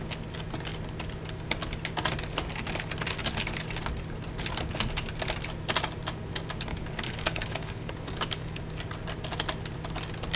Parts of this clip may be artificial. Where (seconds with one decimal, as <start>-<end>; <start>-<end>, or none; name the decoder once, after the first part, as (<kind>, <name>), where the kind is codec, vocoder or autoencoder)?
6.7-8.6 (codec, DAC)